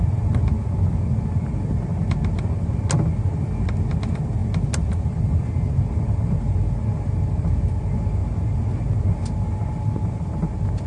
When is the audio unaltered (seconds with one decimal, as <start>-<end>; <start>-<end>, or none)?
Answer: 0.0-10.9